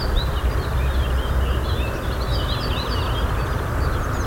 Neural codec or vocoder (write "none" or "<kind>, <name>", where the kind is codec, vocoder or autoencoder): none